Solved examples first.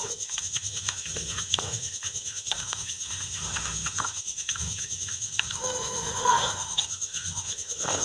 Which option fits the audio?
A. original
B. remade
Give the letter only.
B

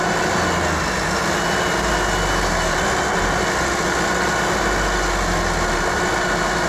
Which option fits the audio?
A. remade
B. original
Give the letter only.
B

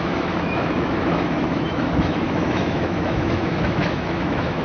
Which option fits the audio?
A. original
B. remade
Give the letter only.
B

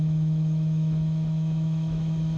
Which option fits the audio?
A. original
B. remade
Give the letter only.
B